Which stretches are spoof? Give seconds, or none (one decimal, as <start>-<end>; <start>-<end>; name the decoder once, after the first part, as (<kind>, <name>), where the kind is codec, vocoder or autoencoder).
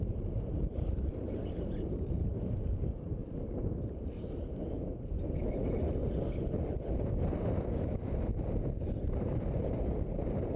0.0-3.2 (vocoder, BigVGAN v2); 3.8-6.0; 9.1-10.6